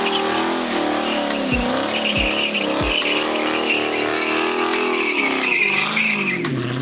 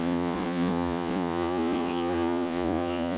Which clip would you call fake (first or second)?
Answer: second